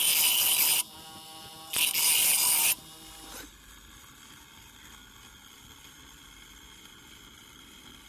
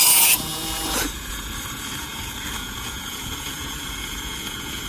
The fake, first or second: second